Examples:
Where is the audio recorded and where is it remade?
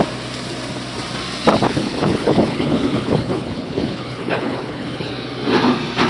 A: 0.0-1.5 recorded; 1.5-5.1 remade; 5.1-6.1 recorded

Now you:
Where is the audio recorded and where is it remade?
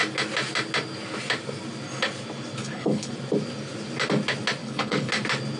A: 0.0-2.6 recorded; 2.6-3.1 remade; 3.1-4.6 recorded; 4.6-5.1 remade; 5.1-5.6 recorded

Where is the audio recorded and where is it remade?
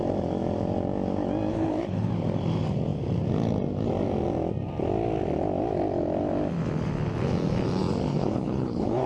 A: 0.0-1.5 recorded; 1.5-2.1 remade; 2.1-8.1 recorded; 8.1-9.1 remade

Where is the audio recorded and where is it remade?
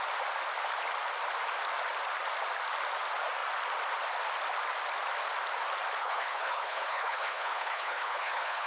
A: 0.0-6.0 recorded; 6.0-8.7 remade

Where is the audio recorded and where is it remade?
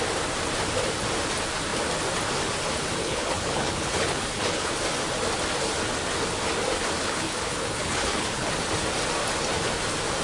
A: 0.0-3.0 recorded; 3.0-4.7 remade; 4.7-7.0 recorded; 7.0-8.5 remade; 8.5-10.2 recorded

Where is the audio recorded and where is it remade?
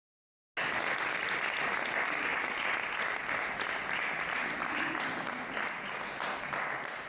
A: 0.0-7.1 recorded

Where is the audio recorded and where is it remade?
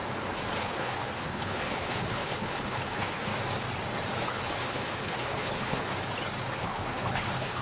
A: 0.0-0.6 recorded; 0.6-3.3 remade; 3.3-4.2 recorded; 4.2-5.9 remade; 5.9-6.6 recorded; 6.6-7.6 remade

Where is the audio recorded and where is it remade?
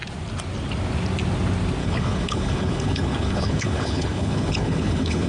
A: 0.0-1.8 recorded; 1.8-5.3 remade